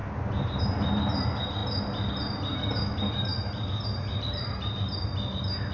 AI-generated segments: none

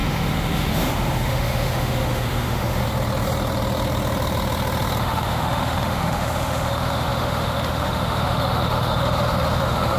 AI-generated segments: 0.0-2.8 (autoencoder, DAC-VAE); 5.0-10.0

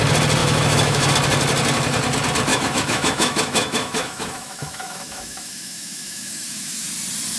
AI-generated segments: 0.4-1.1 (autoencoder, DAC-VAE); 2.5-6.9

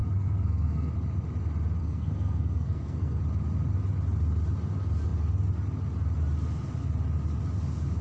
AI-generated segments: 0.0-0.9 (codec, SNAC); 1.8-3.2

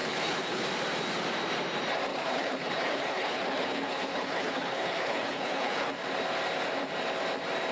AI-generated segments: 0.0-0.6 (codec, HILCodec); 2.1-5.9

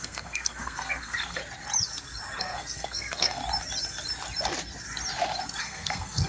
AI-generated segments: 0.0-1.4 (codec, SNAC); 2.4-3.4; 5.6-6.3

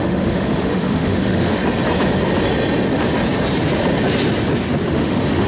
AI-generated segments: 0.0-1.6 (autoencoder, DAC-VAE); 4.9-5.5

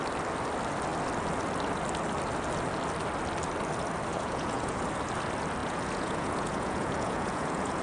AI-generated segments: 4.1-4.8 (vocoder, Vocos); 5.6-7.8